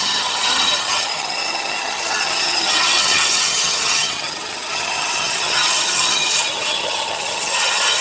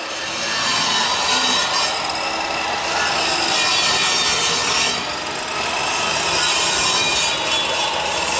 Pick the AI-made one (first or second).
first